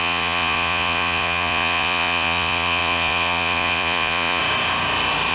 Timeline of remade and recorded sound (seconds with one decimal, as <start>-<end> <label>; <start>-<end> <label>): 0.0-4.4 remade; 4.4-5.3 recorded